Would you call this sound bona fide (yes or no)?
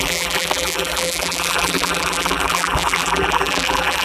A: no